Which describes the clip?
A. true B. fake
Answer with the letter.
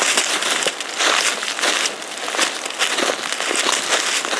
A